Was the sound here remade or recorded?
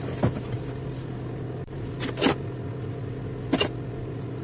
recorded